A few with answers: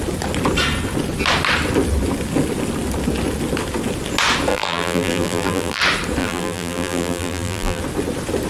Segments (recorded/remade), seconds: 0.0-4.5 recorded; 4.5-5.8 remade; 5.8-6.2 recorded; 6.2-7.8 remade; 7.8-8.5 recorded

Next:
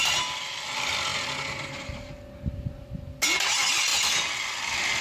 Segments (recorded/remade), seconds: 0.0-1.1 remade; 1.1-3.4 recorded; 3.4-5.0 remade

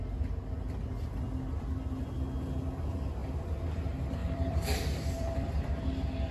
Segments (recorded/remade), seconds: 0.0-4.2 recorded; 4.2-5.7 remade; 5.7-6.3 recorded

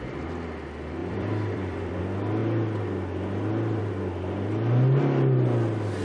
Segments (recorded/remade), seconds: 0.0-1.0 recorded; 1.0-2.0 remade; 2.0-6.0 recorded

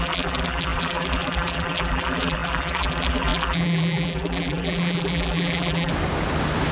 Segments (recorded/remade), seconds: 0.0-5.9 remade; 5.9-6.7 recorded

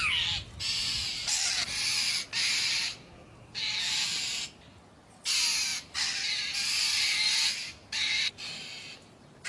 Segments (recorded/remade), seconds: 0.0-9.5 recorded

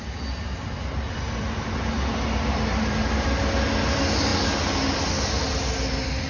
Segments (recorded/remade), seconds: 0.0-6.3 recorded

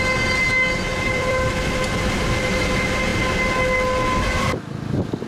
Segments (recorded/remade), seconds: 0.0-0.9 recorded; 0.9-2.5 remade; 2.5-5.3 recorded